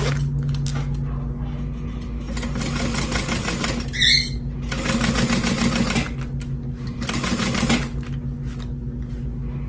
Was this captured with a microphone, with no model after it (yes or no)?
yes